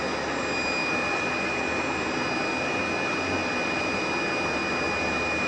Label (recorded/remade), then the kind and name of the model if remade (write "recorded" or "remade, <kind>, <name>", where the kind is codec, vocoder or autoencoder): recorded